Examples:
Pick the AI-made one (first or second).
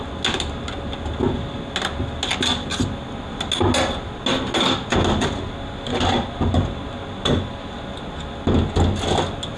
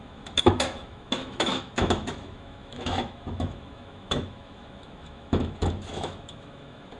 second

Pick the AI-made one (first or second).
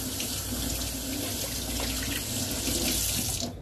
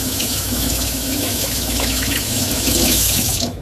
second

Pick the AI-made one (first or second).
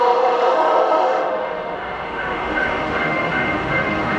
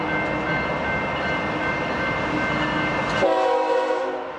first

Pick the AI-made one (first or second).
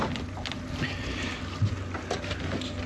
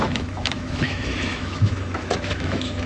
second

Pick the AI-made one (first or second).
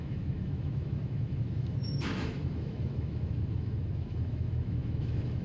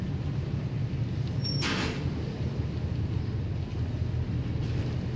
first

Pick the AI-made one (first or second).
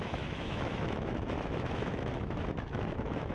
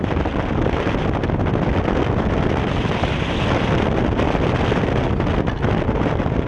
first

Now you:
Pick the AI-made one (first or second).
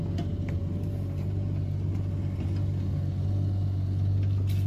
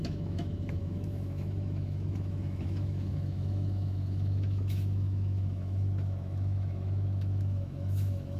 second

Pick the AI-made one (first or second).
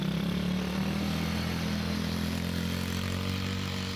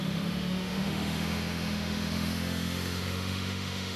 second